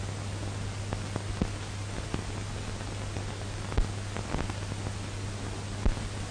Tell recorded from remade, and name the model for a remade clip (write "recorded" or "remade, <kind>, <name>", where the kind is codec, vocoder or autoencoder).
recorded